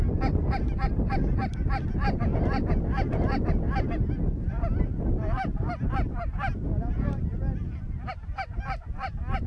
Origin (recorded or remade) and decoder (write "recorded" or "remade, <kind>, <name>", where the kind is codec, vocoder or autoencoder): recorded